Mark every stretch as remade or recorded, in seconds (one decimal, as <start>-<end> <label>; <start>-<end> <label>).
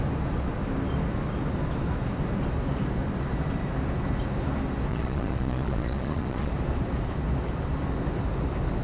0.0-4.9 recorded; 4.9-6.5 remade; 6.5-8.8 recorded